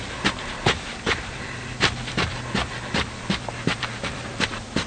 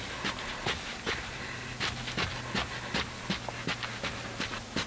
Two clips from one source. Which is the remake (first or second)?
first